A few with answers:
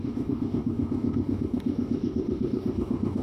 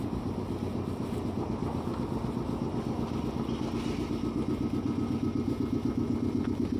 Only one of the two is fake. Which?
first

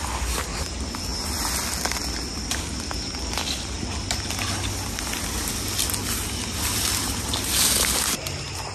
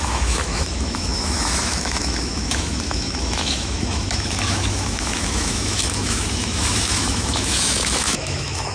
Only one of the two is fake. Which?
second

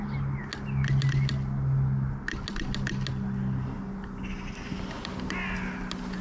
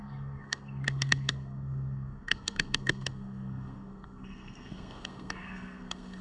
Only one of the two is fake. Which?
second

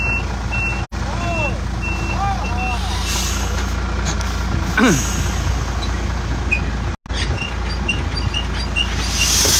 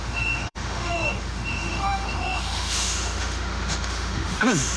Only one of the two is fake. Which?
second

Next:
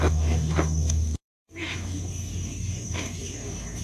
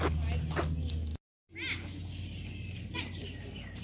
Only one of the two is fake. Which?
first